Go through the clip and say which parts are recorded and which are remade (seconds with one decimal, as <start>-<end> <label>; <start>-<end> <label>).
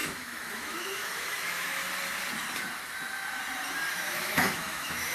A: 0.0-1.8 remade; 1.8-3.9 recorded; 3.9-5.1 remade